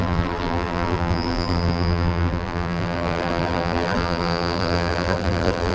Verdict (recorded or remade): remade